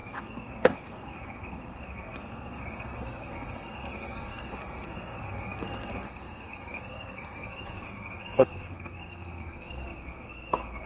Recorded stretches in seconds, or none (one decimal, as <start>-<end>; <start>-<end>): none

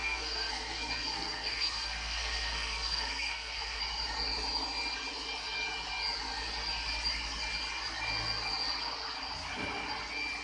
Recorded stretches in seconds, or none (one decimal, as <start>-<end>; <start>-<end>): 3.8-10.4

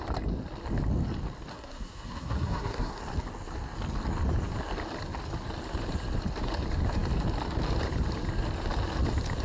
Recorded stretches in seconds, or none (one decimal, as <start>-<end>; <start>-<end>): 0.0-1.5; 3.0-9.4

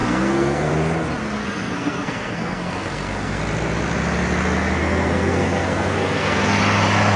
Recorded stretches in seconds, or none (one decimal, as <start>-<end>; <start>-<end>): 0.7-1.4; 3.4-4.8; 6.6-7.2

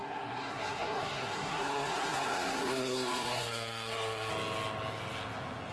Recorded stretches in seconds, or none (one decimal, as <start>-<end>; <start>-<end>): 4.3-5.7

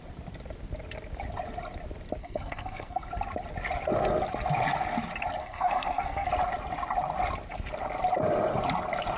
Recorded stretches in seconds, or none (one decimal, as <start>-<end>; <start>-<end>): 0.0-2.2; 3.1-5.4; 6.3-9.2

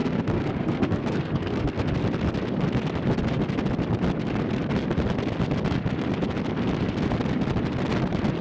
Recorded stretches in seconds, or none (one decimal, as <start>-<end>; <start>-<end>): 1.9-8.4